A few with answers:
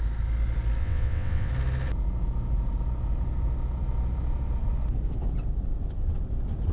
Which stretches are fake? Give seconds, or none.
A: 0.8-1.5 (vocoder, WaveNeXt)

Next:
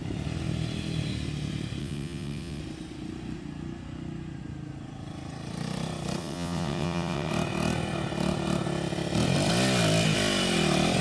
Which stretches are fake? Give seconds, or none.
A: 1.8-2.6 (vocoder, WaveNeXt); 6.2-7.3

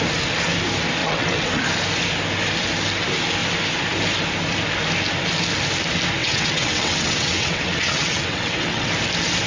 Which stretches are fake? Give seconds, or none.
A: 1.0-1.6 (vocoder, WaveNeXt); 6.2-8.9

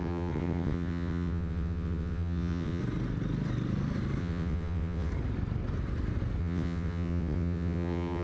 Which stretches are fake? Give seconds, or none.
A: 0.0-2.8 (vocoder, WaveNeXt); 4.2-5.1; 6.4-8.2

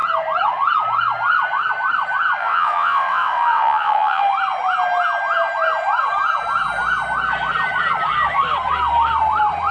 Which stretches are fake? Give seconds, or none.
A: 2.4-4.2 (vocoder, WaveNeXt)

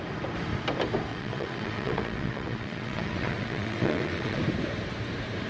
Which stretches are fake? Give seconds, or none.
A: 1.1-4.4 (vocoder, WaveNeXt)

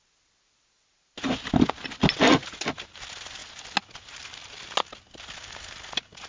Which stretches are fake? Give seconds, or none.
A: none

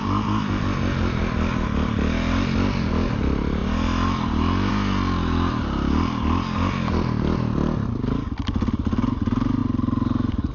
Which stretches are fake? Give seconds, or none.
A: none